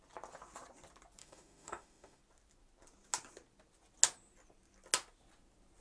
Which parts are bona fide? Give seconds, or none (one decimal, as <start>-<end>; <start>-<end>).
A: 0.0-1.2; 2.2-5.8